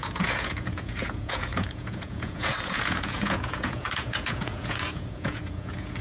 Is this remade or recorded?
remade